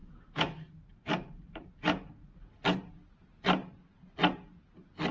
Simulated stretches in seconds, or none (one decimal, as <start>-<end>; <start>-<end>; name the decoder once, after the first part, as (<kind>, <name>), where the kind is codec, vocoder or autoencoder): none